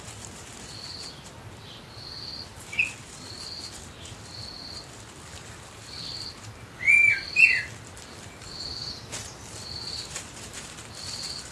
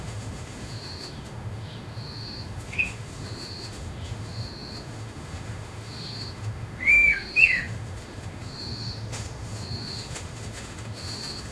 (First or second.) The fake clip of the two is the second